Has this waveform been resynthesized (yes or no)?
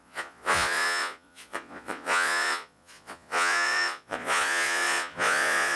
yes